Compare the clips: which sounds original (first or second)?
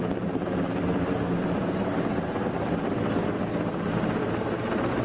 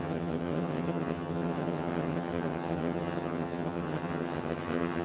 first